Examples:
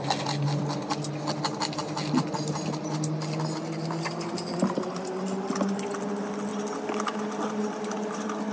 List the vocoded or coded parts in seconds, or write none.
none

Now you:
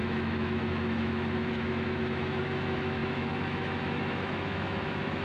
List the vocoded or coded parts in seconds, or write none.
0.0-5.2 (autoencoder, DAC-VAE)

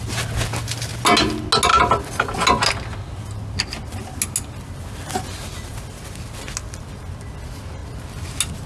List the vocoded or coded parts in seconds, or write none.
none

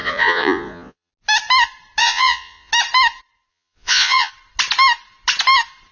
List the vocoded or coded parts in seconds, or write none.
0.0-1.1 (vocoder, Vocos); 2.0-2.7; 3.5-4.3

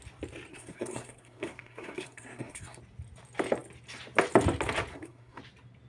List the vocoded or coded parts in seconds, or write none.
0.5-2.8 (codec, SNAC); 4.9-5.4

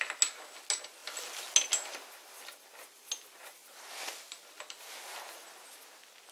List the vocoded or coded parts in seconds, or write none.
none

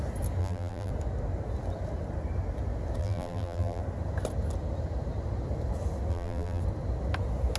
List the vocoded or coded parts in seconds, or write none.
0.4-0.9 (vocoder, BigVGAN v2); 3.0-3.8; 6.1-6.6

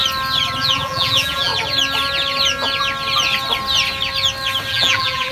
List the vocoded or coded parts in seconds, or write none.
0.6-1.5 (vocoder, BigVGAN v2); 4.7-5.3